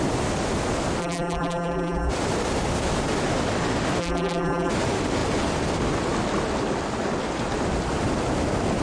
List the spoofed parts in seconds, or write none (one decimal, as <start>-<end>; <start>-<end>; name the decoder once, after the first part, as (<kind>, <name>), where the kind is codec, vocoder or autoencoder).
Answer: 1.0-2.1 (vocoder, BigVGAN v2); 4.0-4.7